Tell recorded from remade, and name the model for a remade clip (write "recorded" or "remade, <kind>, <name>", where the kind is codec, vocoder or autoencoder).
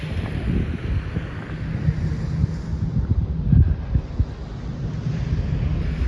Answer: recorded